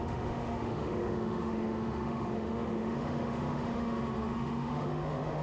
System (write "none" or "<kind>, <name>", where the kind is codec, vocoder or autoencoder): autoencoder, DAC-VAE